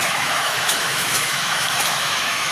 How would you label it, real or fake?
fake